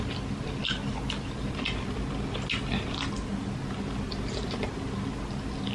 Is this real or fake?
real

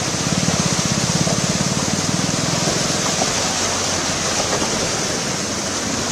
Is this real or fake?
real